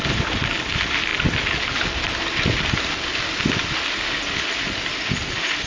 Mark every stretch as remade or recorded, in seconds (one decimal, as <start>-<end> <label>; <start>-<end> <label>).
0.0-5.7 recorded